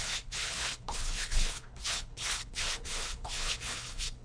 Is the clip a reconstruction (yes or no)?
yes